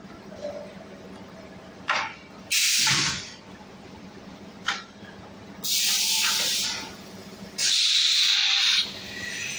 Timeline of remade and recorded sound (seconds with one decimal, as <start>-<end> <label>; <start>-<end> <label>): 0.0-2.4 recorded; 2.4-5.8 remade; 5.8-7.6 recorded; 7.6-8.9 remade; 8.9-9.6 recorded